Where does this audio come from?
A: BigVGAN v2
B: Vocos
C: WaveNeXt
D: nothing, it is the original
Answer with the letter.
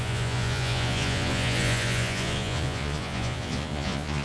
B